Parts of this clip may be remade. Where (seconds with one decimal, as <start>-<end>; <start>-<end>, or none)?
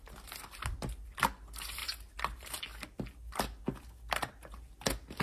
none